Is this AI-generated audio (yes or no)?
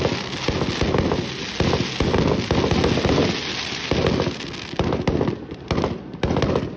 no